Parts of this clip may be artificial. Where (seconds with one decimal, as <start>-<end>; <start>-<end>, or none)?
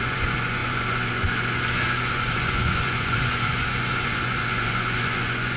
0.0-5.6